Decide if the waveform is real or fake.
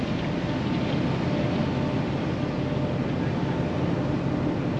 real